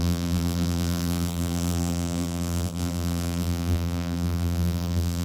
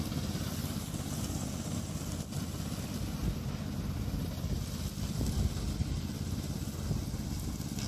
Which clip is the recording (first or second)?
second